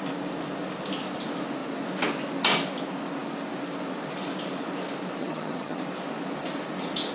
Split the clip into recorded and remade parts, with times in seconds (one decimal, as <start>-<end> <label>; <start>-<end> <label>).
0.0-5.2 recorded; 5.2-5.8 remade; 5.8-7.1 recorded